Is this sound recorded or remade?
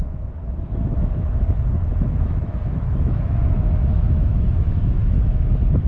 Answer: remade